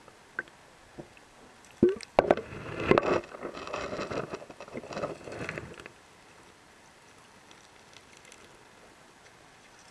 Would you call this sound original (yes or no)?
yes